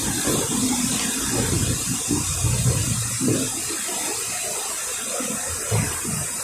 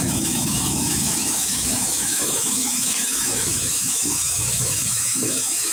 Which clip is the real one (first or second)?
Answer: first